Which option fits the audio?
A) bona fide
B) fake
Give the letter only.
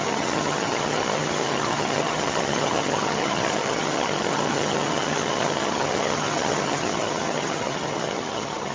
B